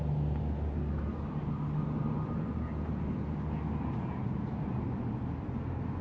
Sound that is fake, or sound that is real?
real